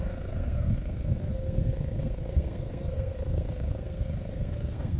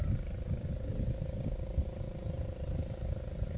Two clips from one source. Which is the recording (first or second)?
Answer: second